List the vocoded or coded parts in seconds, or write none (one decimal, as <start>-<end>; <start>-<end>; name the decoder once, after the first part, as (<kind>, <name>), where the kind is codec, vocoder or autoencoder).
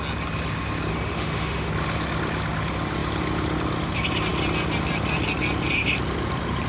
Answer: 0.9-1.7 (autoencoder, DAC-VAE)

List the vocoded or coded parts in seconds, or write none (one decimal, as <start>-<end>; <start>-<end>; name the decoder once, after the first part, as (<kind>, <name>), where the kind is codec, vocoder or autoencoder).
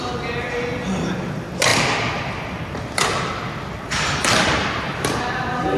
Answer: none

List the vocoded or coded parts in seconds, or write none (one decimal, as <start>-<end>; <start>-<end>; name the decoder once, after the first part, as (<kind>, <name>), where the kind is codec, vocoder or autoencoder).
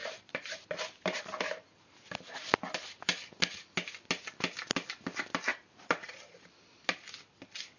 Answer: 0.0-1.2 (vocoder, BigVGAN v2); 5.5-6.5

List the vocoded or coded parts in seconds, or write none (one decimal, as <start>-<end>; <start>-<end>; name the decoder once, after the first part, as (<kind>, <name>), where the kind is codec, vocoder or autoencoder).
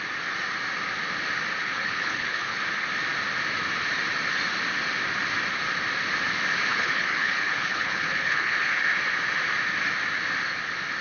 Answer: 1.6-2.6 (codec, HILCodec); 6.7-8.8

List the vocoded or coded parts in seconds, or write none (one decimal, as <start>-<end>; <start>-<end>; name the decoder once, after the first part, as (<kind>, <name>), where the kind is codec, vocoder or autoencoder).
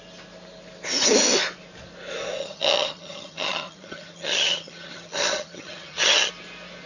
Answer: 2.4-6.3 (vocoder, HiFi-GAN)